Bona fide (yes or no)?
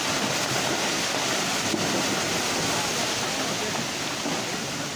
yes